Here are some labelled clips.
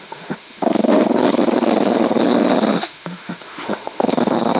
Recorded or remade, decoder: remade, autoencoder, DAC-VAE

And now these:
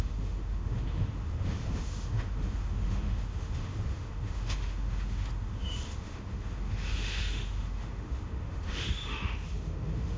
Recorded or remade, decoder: remade, autoencoder, DAC-VAE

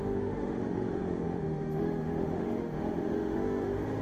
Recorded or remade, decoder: remade, autoencoder, DAC-VAE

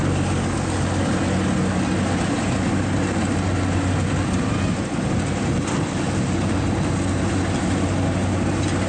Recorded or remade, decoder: recorded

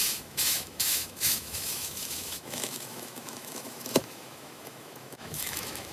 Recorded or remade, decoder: remade, autoencoder, DAC-VAE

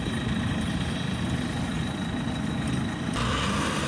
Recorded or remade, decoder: recorded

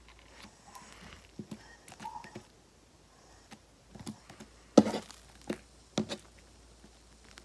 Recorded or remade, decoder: recorded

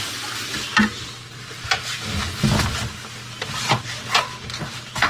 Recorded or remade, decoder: recorded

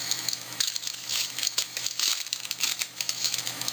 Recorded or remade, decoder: remade, autoencoder, DAC-VAE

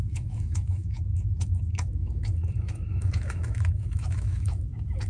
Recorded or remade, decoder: remade, autoencoder, DAC-VAE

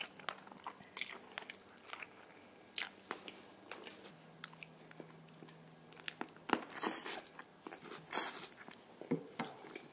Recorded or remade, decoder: recorded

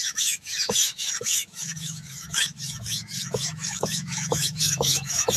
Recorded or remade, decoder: remade, autoencoder, DAC-VAE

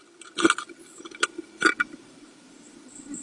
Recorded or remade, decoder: recorded